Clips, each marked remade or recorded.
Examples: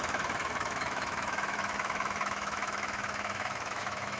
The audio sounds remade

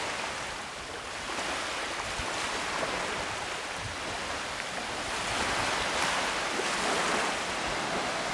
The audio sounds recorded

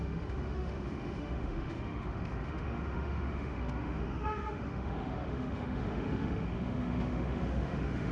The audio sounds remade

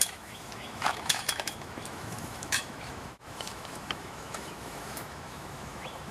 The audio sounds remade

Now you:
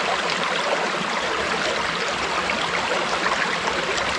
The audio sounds recorded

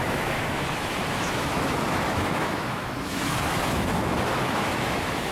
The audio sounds remade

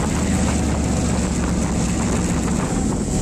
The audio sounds recorded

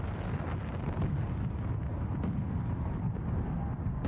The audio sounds recorded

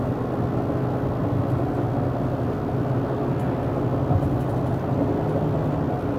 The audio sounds recorded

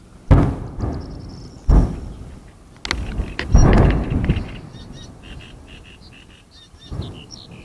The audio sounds recorded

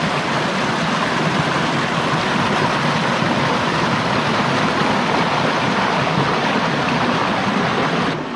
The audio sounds recorded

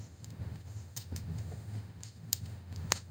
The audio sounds remade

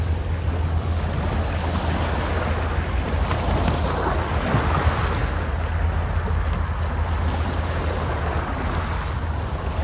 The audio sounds recorded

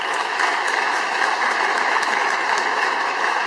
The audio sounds remade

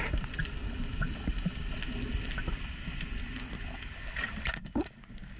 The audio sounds recorded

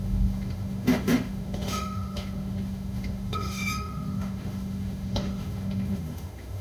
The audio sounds remade